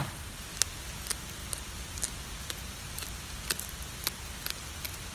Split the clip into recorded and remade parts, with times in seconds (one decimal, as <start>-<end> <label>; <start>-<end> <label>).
0.0-5.1 recorded